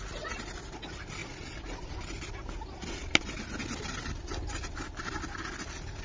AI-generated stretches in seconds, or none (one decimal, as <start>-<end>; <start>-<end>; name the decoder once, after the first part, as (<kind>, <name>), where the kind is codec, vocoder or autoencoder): none